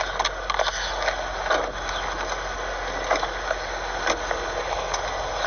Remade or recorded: recorded